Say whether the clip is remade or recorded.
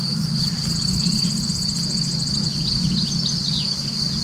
recorded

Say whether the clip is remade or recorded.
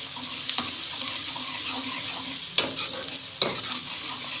recorded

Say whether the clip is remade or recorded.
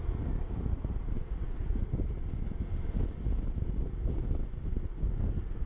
recorded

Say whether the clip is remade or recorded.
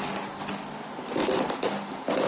recorded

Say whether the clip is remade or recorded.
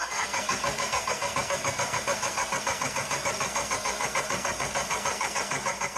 remade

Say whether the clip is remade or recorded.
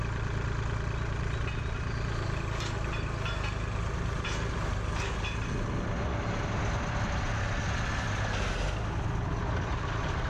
recorded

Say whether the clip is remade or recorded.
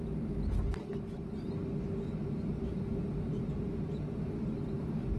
recorded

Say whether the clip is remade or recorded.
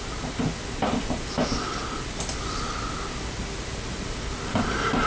recorded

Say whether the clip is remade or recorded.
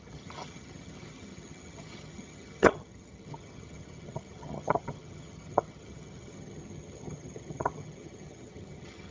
remade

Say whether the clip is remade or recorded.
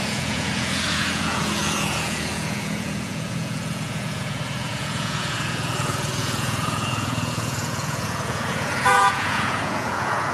remade